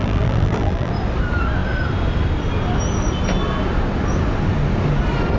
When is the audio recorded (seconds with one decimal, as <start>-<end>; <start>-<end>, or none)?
0.9-5.4